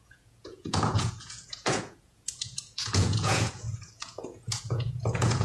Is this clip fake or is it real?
fake